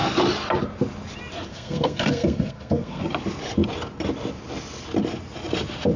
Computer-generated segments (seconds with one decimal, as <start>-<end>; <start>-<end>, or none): 1.5-3.0